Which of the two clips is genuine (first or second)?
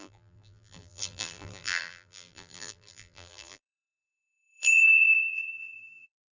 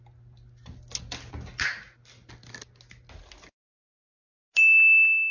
second